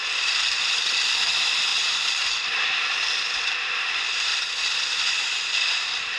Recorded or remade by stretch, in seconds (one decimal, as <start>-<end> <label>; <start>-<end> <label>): 0.0-4.3 remade; 4.3-4.9 recorded; 4.9-6.2 remade